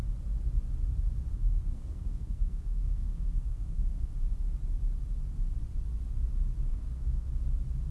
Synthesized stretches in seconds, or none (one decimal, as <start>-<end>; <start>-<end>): 1.3-4.1; 6.7-7.3